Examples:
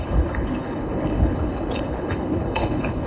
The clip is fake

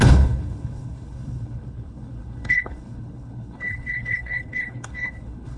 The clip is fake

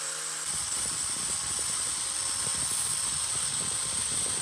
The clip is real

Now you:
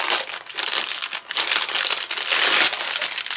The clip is real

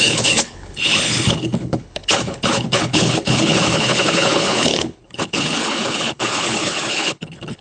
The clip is fake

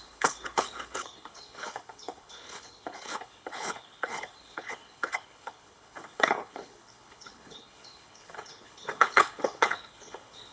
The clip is fake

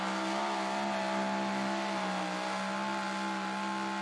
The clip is real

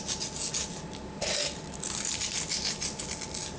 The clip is real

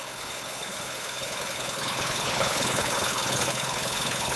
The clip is fake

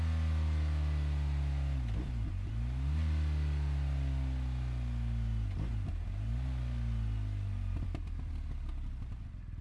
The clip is real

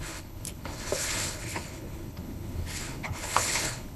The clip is fake